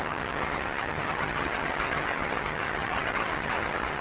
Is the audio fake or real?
fake